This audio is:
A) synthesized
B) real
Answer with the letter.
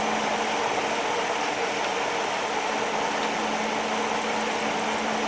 B